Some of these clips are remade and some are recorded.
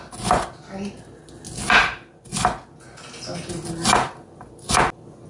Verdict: recorded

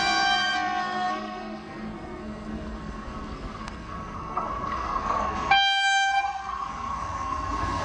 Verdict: remade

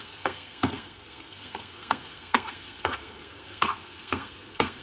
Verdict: remade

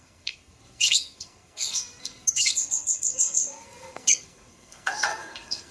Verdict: remade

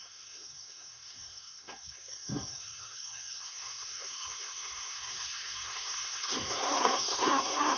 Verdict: remade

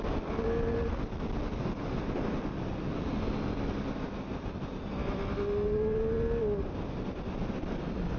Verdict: recorded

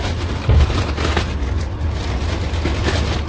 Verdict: recorded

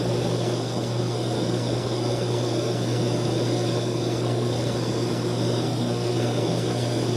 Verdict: remade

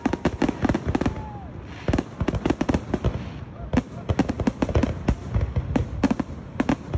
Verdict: recorded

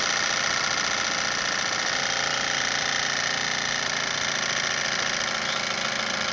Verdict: recorded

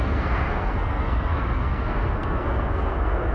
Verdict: remade